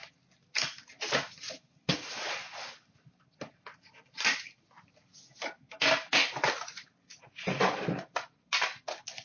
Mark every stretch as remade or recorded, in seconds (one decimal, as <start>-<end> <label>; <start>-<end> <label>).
0.0-9.2 recorded